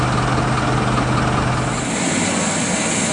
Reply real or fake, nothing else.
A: real